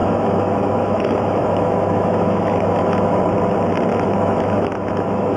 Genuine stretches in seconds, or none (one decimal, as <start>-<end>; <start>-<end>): 3.2-3.9